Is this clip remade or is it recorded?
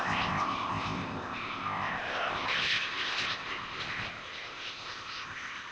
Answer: remade